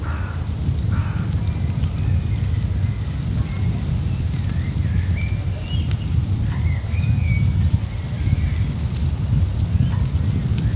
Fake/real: real